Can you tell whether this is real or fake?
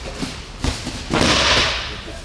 real